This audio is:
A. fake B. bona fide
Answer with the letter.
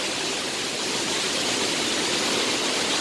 B